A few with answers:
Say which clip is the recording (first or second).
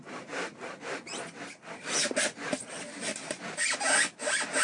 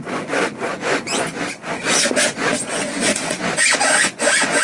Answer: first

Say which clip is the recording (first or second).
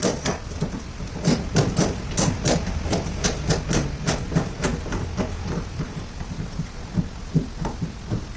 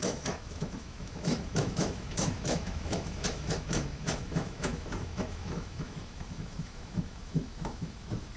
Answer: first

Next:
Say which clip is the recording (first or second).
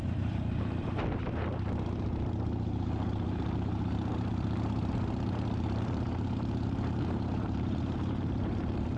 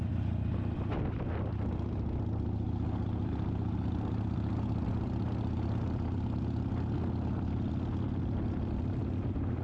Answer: second